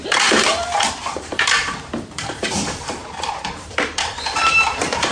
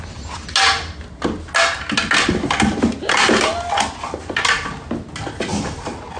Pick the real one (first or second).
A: second